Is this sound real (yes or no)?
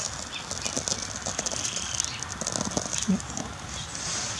yes